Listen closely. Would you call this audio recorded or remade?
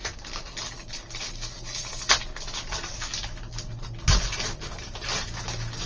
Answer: recorded